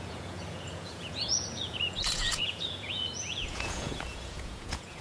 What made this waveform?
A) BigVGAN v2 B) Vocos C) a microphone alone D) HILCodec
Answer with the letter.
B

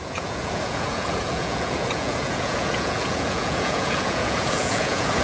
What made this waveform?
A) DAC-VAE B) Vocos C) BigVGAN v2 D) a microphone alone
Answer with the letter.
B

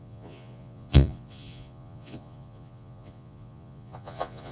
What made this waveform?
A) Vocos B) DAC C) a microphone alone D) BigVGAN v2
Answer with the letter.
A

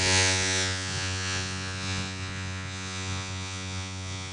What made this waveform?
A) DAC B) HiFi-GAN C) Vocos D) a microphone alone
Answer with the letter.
C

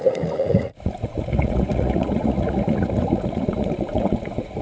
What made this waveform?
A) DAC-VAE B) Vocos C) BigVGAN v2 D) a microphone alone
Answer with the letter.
B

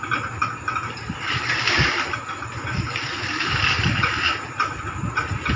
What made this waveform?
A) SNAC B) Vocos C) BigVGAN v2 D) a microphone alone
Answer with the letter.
D